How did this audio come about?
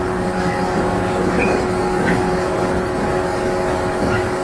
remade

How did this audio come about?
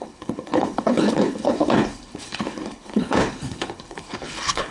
remade